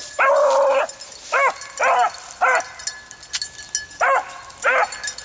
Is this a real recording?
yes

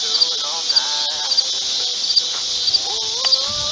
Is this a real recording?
yes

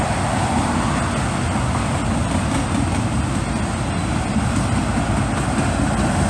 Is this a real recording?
yes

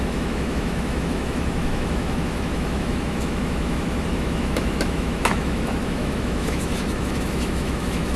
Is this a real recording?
no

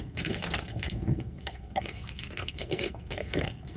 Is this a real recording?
no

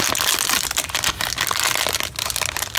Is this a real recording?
yes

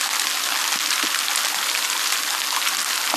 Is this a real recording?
yes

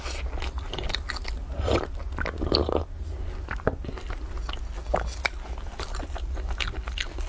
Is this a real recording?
yes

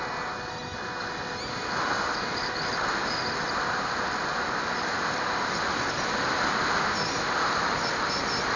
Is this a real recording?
yes